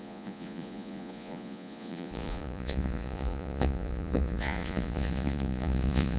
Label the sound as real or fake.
fake